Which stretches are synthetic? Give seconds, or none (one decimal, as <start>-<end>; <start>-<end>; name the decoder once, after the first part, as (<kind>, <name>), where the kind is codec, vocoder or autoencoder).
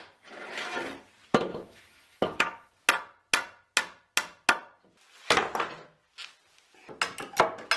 1.5-2.7 (autoencoder, DAC-VAE)